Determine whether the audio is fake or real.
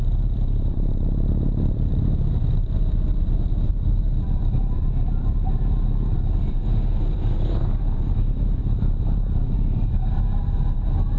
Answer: fake